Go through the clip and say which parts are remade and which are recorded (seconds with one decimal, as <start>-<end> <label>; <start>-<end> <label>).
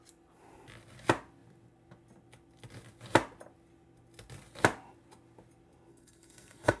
0.0-5.9 recorded; 5.9-6.8 remade